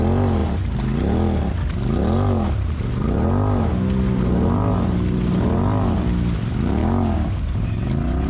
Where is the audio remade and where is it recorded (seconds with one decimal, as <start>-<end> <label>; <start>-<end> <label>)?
0.0-6.8 recorded; 6.8-7.4 remade; 7.4-8.3 recorded